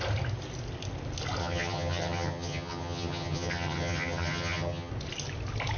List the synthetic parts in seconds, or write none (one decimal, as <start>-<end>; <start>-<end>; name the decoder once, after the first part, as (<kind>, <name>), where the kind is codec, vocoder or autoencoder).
1.4-4.9 (vocoder, HiFi-GAN)